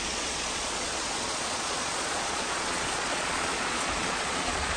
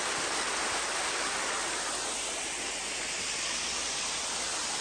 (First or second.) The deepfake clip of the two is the first